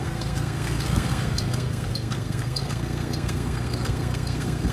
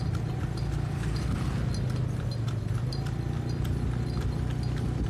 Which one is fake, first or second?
first